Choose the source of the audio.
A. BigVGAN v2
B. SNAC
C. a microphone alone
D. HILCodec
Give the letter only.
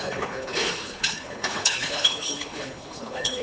D